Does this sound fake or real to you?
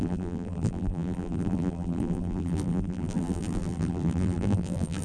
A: fake